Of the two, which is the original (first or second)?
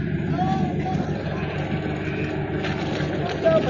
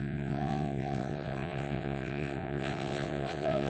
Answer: first